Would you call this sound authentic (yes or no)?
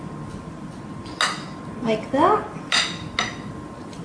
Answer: yes